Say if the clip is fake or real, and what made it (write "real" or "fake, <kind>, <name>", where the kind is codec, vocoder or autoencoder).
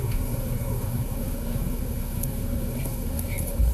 fake, codec, SNAC